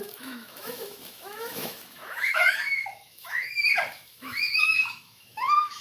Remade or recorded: remade